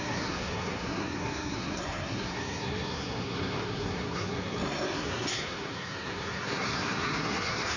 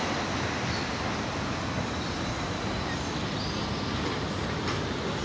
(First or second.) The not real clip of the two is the first